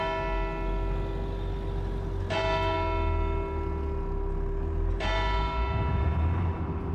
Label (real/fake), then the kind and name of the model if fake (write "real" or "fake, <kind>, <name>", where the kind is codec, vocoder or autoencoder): real